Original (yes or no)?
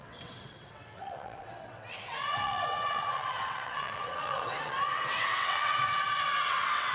no